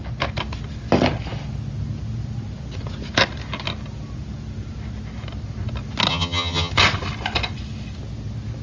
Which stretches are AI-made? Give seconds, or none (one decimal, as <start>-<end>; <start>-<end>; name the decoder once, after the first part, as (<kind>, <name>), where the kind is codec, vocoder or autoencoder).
6.1-6.7 (vocoder, HiFi-GAN)

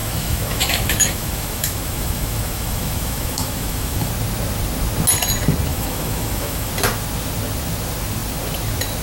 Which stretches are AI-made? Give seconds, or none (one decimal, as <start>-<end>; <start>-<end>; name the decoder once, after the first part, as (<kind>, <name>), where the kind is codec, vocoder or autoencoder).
0.0-4.1 (autoencoder, DAC-VAE); 5.7-6.7

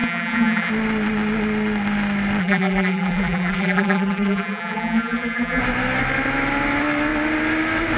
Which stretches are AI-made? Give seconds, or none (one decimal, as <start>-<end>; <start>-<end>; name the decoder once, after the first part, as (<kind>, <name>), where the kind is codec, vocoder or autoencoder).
0.0-0.7 (vocoder, BigVGAN v2); 2.4-5.6

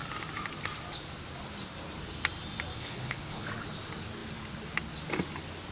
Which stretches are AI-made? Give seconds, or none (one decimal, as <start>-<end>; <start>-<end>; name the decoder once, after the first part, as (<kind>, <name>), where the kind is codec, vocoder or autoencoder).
2.8-3.5 (codec, HILCodec)

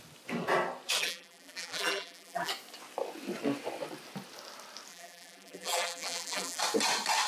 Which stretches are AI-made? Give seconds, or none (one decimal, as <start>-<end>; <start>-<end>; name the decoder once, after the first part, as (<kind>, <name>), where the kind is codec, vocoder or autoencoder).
1.0-2.5 (vocoder, BigVGAN v2); 4.9-6.6

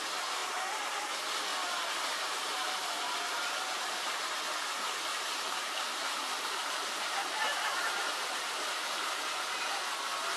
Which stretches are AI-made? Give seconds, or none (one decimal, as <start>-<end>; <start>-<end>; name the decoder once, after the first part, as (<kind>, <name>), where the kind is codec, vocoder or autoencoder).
0.4-1.1 (vocoder, BigVGAN v2); 1.5-4.4; 5.1-9.3

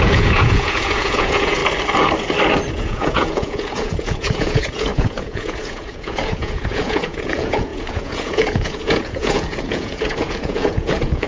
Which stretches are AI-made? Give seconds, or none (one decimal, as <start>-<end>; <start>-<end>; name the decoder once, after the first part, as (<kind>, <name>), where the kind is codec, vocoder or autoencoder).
0.0-1.6 (vocoder, Vocos); 2.7-11.3